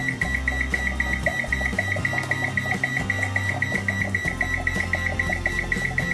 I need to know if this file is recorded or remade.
recorded